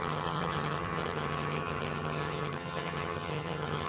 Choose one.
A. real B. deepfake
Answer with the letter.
B